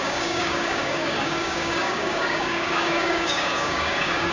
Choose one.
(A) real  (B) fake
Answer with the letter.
B